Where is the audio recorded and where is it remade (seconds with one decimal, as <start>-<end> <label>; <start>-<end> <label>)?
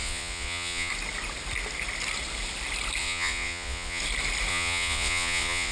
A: 0.0-0.9 remade; 0.9-3.0 recorded; 3.0-4.0 remade; 4.0-4.5 recorded; 4.5-5.7 remade